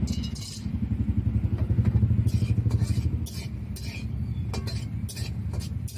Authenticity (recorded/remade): recorded